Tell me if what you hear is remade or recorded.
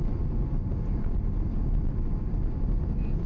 recorded